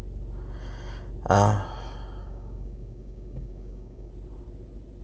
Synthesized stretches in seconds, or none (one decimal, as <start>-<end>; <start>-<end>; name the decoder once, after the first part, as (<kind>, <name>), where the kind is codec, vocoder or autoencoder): 2.2-4.1 (codec, DAC)